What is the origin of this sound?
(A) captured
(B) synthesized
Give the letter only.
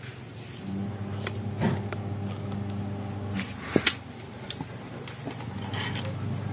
A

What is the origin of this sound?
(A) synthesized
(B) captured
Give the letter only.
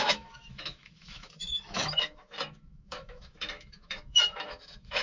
A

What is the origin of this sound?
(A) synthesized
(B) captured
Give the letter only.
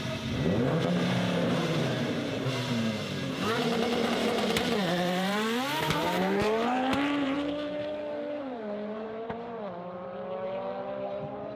A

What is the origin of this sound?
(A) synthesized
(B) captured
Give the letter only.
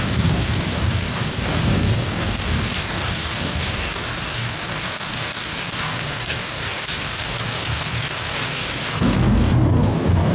A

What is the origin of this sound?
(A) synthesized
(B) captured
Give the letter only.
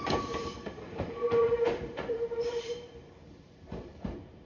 A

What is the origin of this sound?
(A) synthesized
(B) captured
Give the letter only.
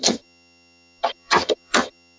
A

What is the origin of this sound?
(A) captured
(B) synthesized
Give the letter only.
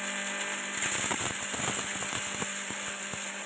A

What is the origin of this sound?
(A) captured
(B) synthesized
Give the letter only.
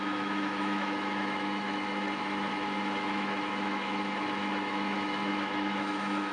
B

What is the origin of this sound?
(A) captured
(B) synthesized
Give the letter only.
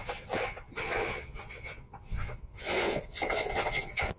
B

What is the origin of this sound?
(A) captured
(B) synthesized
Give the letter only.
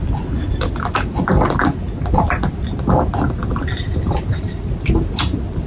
A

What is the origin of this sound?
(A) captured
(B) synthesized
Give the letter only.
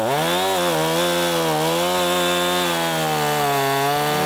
A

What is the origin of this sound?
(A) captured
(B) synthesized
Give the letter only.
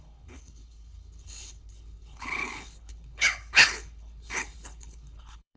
B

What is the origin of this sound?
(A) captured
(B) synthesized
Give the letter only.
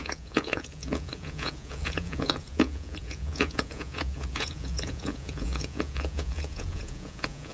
B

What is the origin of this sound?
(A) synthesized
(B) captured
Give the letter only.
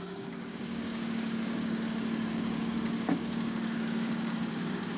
A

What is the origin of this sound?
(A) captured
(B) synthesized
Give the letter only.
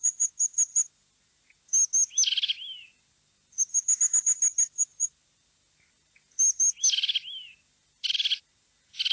A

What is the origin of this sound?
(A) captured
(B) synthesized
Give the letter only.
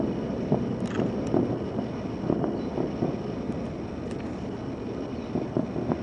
A